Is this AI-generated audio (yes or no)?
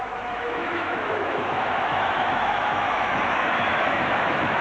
yes